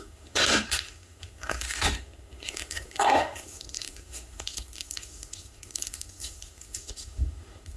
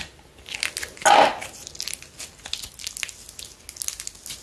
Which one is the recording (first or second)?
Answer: second